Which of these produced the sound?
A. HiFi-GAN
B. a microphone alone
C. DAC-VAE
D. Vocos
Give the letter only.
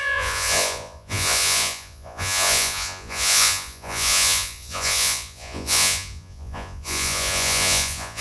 D